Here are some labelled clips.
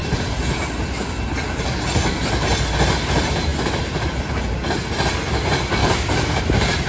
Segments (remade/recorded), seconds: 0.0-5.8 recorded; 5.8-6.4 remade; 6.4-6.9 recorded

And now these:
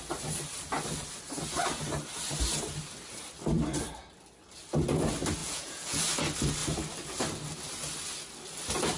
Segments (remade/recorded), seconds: 0.0-5.4 recorded; 5.4-6.0 remade; 6.0-9.0 recorded

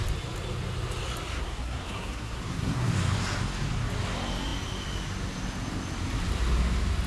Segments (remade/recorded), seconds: 0.0-1.3 recorded; 1.3-2.9 remade; 2.9-7.1 recorded